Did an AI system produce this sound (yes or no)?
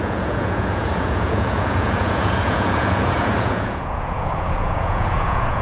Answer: yes